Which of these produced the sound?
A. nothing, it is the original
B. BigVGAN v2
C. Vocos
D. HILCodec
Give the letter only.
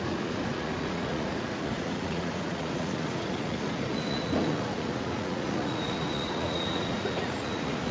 C